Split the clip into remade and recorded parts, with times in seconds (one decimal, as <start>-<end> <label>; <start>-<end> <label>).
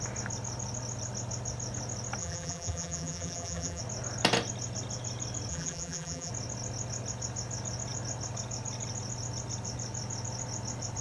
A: 0.0-2.2 recorded; 2.2-3.8 remade; 3.8-5.5 recorded; 5.5-6.3 remade; 6.3-11.0 recorded